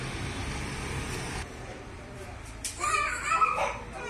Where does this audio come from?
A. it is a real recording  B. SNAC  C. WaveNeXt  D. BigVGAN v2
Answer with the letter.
D